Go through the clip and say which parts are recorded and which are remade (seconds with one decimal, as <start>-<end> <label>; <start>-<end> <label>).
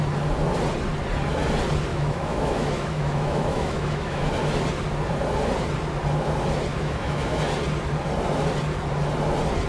0.0-1.9 recorded; 1.9-4.3 remade; 4.3-6.7 recorded; 6.7-7.4 remade; 7.4-9.7 recorded